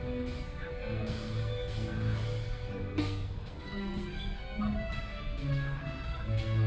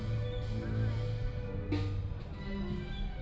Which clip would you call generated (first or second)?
first